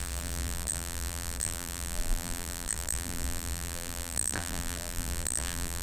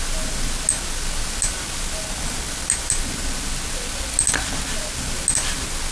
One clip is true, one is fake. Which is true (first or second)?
second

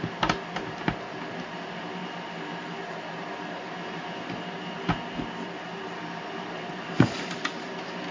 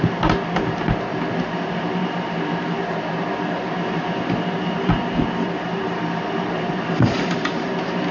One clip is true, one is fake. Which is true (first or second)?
first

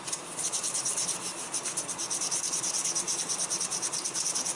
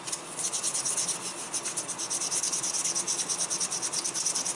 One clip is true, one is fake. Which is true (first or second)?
second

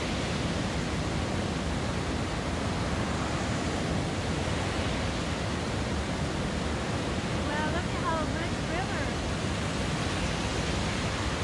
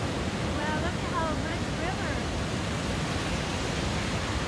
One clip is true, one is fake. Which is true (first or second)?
first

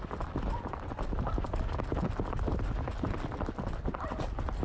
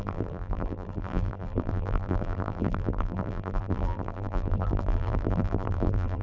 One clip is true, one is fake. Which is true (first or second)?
first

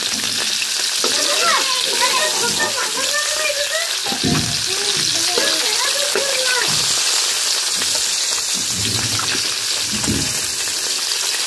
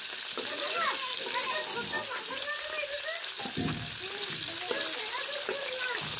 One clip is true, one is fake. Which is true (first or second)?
first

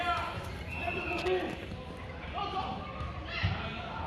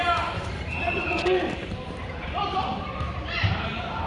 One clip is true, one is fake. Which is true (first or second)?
first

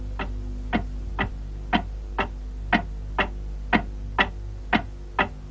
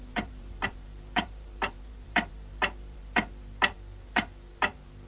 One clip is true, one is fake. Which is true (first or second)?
first